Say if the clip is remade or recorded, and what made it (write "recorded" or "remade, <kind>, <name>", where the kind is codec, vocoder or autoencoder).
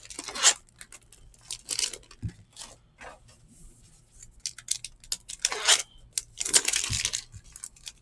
recorded